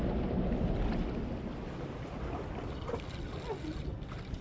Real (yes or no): yes